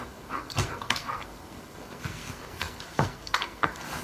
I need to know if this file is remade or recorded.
remade